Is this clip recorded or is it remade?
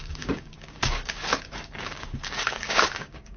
remade